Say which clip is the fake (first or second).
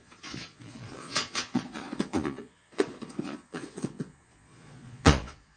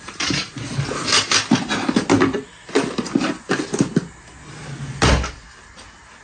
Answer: first